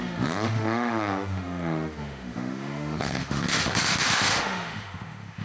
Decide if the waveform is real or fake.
fake